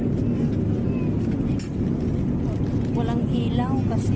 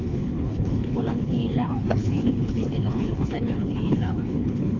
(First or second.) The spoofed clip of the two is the second